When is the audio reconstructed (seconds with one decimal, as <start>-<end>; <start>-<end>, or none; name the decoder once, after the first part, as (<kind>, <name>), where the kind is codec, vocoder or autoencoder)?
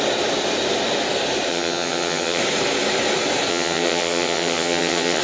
1.5-2.4 (vocoder, HiFi-GAN); 3.5-5.2